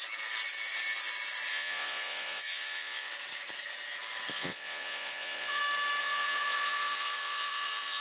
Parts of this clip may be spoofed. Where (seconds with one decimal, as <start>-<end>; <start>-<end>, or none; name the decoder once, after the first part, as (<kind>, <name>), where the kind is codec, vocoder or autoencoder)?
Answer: 1.5-3.1 (vocoder, Vocos); 4.3-5.6; 6.0-8.0